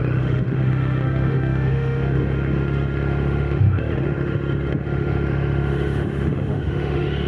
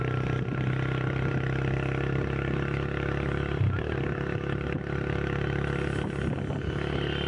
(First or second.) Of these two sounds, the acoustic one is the second